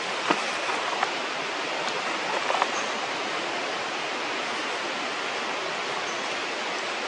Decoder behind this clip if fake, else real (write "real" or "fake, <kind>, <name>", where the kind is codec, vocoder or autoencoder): real